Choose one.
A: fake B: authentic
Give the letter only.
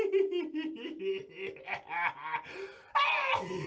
B